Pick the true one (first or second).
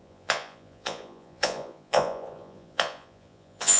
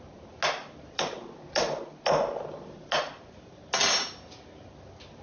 second